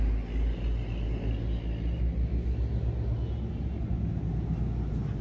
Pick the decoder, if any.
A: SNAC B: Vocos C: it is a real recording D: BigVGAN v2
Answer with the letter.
C